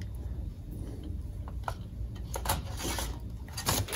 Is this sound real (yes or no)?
yes